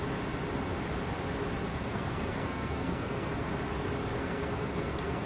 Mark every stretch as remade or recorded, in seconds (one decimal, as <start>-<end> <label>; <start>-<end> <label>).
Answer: 0.0-1.7 recorded; 1.7-3.5 remade; 3.5-4.2 recorded; 4.2-5.3 remade

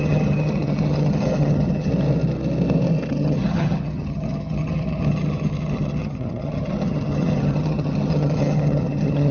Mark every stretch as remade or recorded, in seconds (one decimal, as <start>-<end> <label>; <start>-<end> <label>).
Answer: 0.0-1.9 remade; 1.9-3.1 recorded; 3.1-9.3 remade

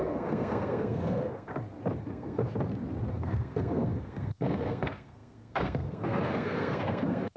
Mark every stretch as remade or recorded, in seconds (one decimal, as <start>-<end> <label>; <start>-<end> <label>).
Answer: 0.0-1.5 remade; 1.5-2.0 recorded; 2.0-2.4 remade; 2.4-3.1 recorded; 3.1-7.4 remade

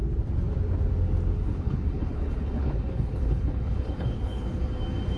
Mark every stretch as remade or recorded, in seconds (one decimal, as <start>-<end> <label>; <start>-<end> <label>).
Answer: 0.0-1.5 recorded; 1.5-4.6 remade; 4.6-5.2 recorded

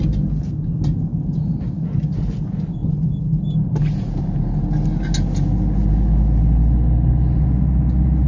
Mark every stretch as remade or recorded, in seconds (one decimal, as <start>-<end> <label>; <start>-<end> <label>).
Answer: 0.0-8.3 recorded

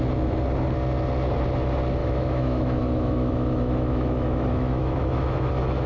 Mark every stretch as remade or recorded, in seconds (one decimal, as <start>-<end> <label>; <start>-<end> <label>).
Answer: 0.0-2.0 recorded; 2.0-5.5 remade; 5.5-5.9 recorded

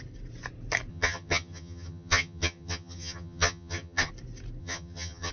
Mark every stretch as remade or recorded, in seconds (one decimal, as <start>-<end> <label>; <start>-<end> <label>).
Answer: 0.0-0.9 recorded; 0.9-4.1 remade; 4.1-4.6 recorded; 4.6-5.3 remade

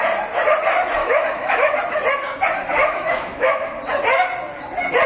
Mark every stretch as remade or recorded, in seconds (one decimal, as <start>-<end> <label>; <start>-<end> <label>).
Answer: 0.0-1.0 recorded; 1.0-1.8 remade; 1.8-2.7 recorded; 2.7-3.8 remade; 3.8-5.1 recorded